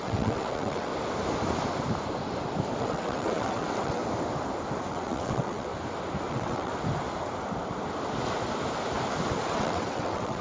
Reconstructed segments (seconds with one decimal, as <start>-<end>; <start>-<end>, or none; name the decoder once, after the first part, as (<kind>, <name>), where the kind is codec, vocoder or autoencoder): 0.0-0.9 (vocoder, WaveNeXt); 2.8-4.0; 4.9-5.7; 6.3-6.7; 9.5-10.4